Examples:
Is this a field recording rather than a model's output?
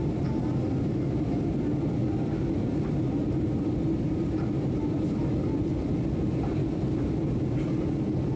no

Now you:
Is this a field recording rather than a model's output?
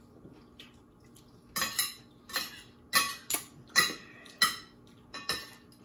yes